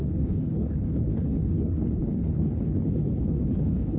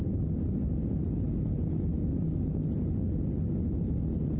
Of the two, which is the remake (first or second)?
first